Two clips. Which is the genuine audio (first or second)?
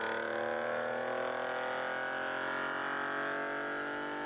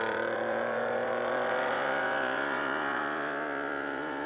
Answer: first